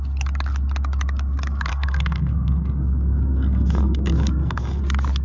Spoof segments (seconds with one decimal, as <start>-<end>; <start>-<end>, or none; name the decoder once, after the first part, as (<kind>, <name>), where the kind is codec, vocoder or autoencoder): 1.7-4.8 (codec, SNAC)